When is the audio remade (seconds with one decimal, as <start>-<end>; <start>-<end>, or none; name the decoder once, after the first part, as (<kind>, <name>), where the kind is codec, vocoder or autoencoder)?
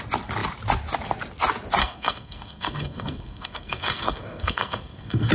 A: 1.8-5.3 (codec, SNAC)